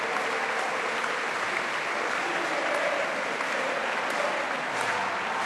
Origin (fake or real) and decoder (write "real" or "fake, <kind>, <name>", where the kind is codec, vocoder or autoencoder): real